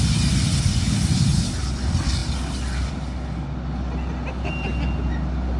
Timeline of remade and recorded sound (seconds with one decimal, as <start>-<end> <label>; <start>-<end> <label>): 0.0-2.2 recorded; 2.2-2.9 remade; 2.9-5.6 recorded